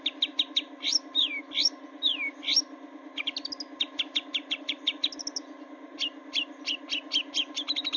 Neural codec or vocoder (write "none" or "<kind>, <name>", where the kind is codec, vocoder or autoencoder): none